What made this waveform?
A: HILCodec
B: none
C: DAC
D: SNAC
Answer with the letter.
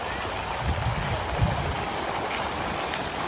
B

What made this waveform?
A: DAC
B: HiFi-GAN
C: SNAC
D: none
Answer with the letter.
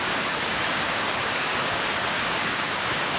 A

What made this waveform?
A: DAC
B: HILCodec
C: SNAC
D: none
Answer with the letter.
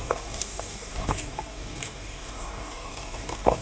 A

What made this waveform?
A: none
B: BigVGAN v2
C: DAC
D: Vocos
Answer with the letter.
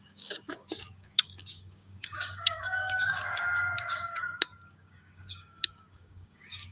C